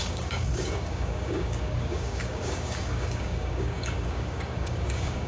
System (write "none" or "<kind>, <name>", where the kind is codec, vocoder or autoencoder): codec, DAC